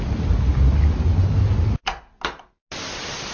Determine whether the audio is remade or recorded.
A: recorded